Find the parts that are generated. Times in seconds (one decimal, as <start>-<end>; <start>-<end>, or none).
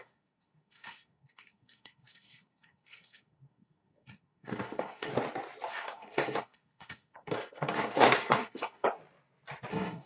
0.0-5.1; 5.7-9.0; 9.7-10.1